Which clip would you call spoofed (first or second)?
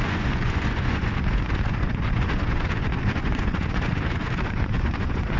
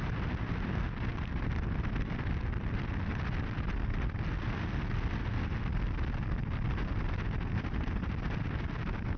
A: first